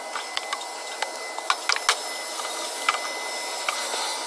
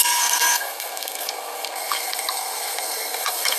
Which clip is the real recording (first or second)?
first